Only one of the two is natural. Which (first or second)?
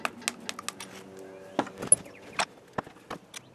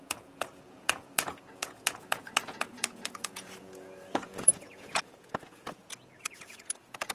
first